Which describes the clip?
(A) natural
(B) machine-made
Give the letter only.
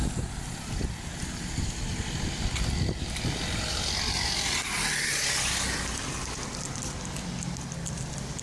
A